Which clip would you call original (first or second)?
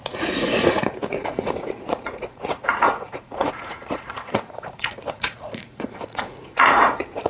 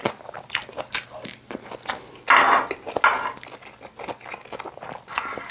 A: second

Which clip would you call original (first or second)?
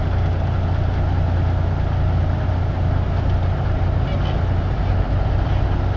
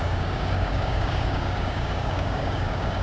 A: first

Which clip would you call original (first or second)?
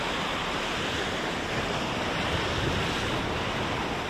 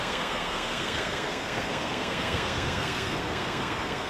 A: first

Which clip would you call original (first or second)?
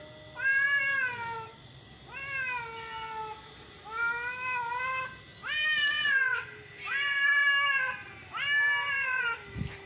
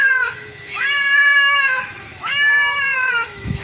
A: first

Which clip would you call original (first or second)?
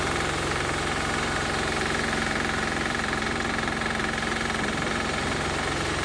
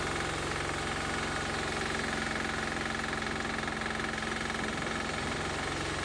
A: second